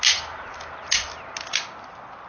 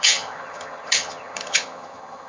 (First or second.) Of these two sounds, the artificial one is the second